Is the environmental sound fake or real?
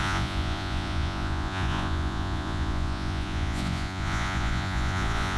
fake